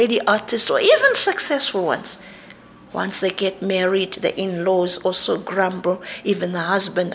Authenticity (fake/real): real